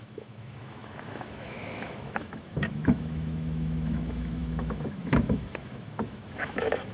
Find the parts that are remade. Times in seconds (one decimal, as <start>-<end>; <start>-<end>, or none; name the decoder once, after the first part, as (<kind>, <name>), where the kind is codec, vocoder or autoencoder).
0.0-6.9 (autoencoder, DAC-VAE)